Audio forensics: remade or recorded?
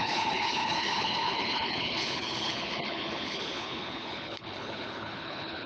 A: remade